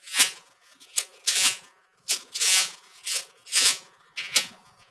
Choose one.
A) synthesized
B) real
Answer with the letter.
A